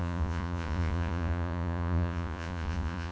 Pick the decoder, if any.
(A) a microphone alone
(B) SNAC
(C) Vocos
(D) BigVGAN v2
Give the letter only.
C